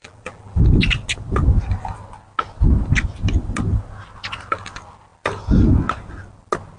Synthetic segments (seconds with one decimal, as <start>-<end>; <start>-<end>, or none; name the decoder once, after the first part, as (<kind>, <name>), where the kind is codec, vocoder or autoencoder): 0.0-0.6 (vocoder, BigVGAN v2)